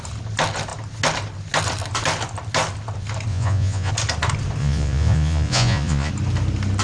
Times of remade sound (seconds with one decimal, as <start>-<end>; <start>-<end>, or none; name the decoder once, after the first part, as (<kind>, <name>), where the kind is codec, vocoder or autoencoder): 3.3-3.9 (vocoder, Vocos); 4.6-6.1